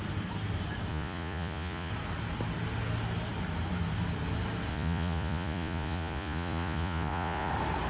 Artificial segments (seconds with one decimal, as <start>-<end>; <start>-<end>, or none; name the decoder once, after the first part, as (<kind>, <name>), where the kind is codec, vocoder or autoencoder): 0.9-1.9 (vocoder, Vocos); 4.7-7.5